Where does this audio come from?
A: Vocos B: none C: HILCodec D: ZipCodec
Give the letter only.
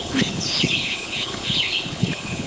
C